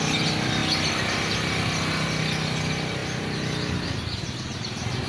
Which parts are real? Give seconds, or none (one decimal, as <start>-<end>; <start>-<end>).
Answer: 0.0-5.1

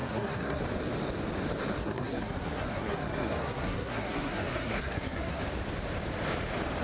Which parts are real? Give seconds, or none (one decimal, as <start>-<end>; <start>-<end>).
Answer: 0.6-1.8; 5.4-6.8

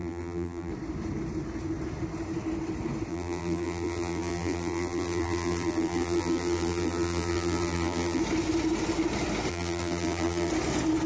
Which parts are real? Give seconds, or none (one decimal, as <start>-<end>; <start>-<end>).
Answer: 0.7-3.1; 8.2-9.5; 10.5-11.1

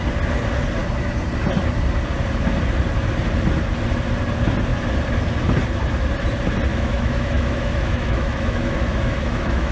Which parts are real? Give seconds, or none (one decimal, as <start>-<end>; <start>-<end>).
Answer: 0.0-6.7

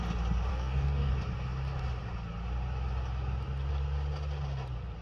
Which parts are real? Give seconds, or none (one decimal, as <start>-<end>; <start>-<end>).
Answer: 0.0-0.5; 1.1-5.0

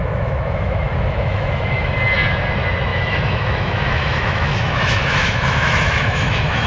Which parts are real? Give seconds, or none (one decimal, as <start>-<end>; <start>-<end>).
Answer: 1.9-2.9

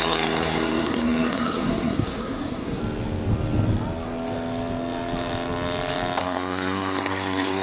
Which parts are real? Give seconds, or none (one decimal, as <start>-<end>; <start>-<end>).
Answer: 2.8-6.2